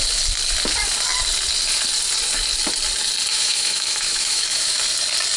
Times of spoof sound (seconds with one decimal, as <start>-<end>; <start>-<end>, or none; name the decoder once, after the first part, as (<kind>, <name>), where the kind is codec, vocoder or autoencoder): 3.3-4.8 (autoencoder, DAC-VAE)